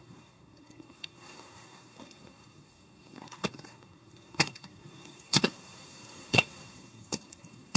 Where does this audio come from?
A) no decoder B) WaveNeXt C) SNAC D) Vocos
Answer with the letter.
C